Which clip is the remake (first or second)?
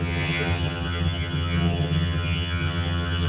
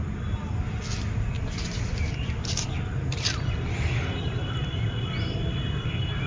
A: first